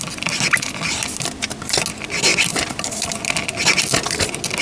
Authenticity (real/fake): real